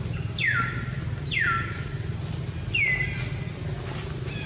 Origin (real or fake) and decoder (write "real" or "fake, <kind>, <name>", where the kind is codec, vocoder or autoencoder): real